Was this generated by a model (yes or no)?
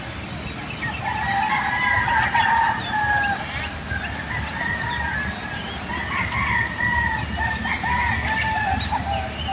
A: no